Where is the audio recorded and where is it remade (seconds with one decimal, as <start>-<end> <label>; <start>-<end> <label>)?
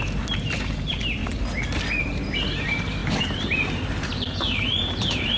0.0-1.2 remade; 1.2-2.0 recorded; 2.0-5.4 remade